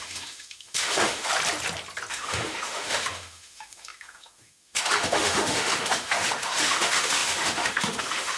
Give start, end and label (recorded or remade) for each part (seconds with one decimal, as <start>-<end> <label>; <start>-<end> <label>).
0.0-1.3 remade; 1.3-2.1 recorded; 2.1-8.4 remade